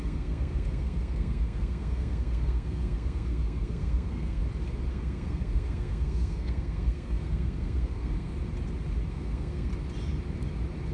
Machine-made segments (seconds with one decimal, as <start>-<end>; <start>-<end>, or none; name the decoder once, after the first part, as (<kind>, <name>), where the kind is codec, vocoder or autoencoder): 0.0-4.4 (codec, SNAC); 4.9-8.3; 9.1-9.7